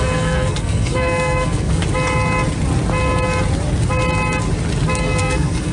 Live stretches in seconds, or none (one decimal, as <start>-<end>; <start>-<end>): 1.8-5.2